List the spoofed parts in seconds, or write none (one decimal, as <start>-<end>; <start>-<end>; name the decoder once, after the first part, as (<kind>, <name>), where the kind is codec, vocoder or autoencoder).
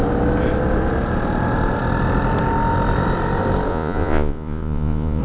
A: 3.7-5.2 (vocoder, Vocos)